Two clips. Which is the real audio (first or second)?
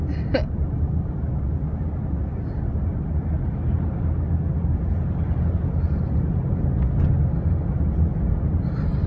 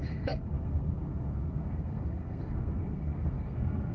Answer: first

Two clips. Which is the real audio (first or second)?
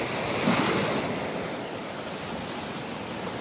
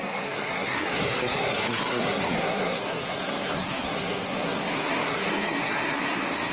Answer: first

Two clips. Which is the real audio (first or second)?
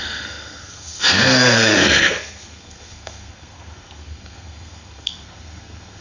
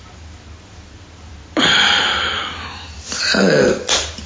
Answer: second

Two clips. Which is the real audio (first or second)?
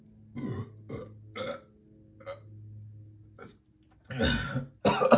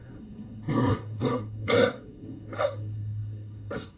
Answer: first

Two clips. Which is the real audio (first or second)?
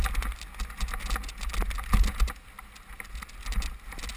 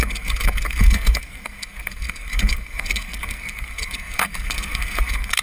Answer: first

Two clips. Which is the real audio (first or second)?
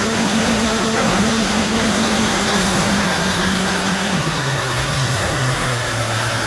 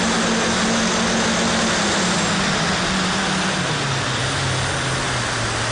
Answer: second